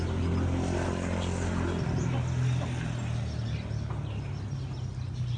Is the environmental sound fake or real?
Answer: real